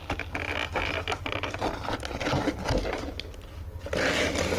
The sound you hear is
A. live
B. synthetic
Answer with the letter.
A